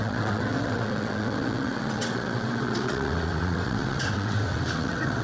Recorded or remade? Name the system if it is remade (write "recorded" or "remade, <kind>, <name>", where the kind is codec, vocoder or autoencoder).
remade, vocoder, WaveNeXt